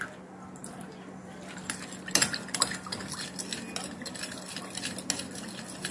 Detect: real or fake real